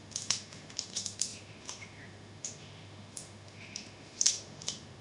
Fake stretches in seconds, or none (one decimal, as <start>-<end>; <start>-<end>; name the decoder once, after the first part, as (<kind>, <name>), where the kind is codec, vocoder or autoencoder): 0.0-5.0 (autoencoder, DAC-VAE)